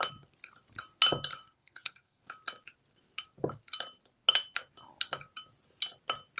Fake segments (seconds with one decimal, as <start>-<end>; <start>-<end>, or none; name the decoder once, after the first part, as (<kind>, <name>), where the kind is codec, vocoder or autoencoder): 1.3-2.2 (codec, SNAC)